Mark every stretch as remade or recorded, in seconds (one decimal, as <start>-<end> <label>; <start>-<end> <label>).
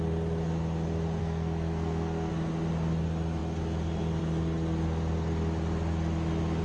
0.0-1.2 recorded; 1.2-2.3 remade; 2.3-6.6 recorded